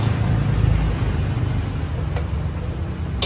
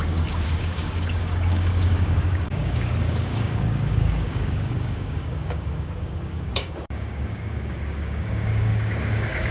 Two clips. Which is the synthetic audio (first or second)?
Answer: second